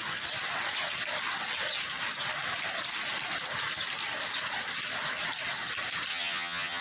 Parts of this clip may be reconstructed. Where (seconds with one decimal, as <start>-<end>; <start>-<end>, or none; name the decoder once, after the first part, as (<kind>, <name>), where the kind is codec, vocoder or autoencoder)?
6.1-6.8 (vocoder, HiFi-GAN)